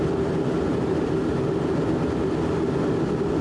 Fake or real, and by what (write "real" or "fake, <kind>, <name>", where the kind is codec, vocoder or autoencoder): real